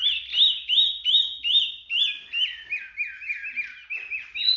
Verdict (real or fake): real